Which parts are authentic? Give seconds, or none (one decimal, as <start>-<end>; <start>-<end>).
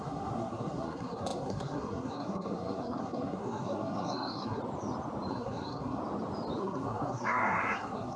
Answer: 4.6-5.3; 6.0-6.6